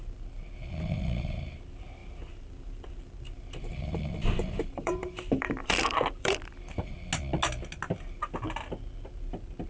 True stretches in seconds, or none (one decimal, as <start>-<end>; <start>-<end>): 0.0-2.0; 6.9-9.7